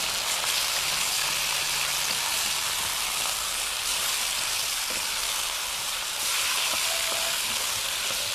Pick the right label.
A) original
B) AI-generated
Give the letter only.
A